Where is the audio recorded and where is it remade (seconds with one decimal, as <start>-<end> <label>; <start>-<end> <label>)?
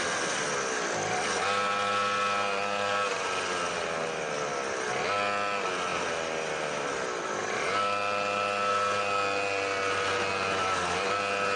0.0-5.9 recorded; 5.9-6.5 remade; 6.5-11.6 recorded